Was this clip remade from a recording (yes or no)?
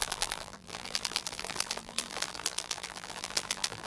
yes